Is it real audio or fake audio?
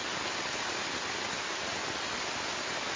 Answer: real